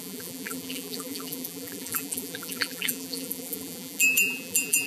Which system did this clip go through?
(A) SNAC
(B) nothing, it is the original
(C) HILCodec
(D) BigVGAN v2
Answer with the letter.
D